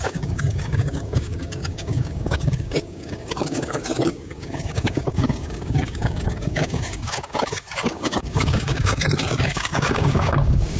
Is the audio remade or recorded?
remade